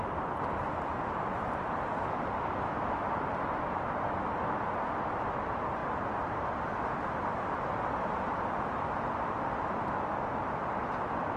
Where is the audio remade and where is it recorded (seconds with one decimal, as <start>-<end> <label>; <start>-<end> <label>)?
0.0-0.9 recorded; 0.9-3.3 remade; 3.3-5.8 recorded; 5.8-6.5 remade; 6.5-11.4 recorded